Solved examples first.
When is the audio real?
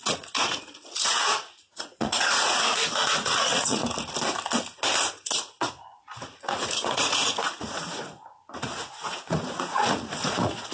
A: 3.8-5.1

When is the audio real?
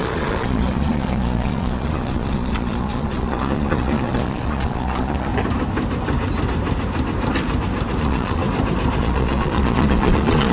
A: 5.3-8.0; 8.4-9.0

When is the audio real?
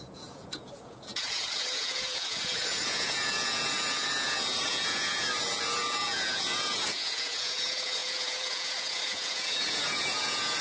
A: none